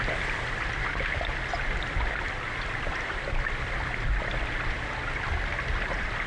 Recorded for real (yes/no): yes